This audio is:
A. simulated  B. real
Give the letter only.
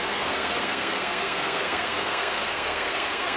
A